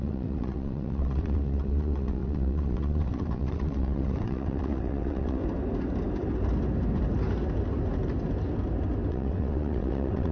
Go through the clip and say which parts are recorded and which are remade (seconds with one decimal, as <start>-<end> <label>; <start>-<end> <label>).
0.0-5.4 remade; 5.4-9.1 recorded; 9.1-10.3 remade